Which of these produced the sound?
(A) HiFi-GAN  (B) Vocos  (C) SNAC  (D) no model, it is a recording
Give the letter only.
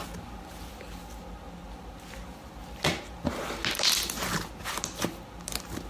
D